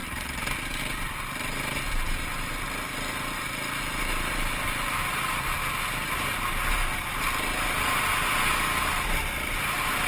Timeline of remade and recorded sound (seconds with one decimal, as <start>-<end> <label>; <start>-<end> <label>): 0.0-0.8 remade; 0.8-10.1 recorded